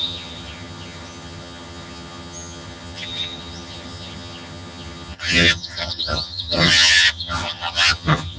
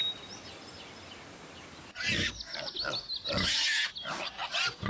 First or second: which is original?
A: second